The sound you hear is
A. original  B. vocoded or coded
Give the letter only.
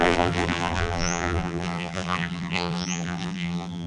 B